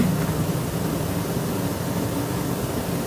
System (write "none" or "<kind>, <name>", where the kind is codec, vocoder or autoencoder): none